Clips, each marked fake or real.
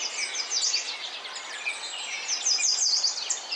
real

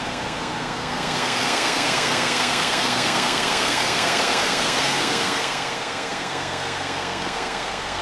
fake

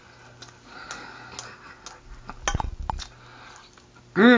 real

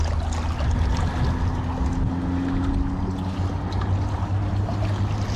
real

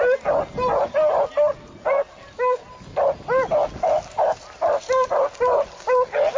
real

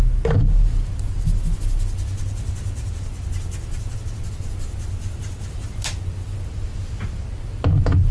real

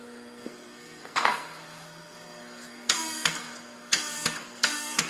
fake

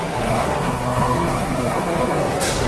fake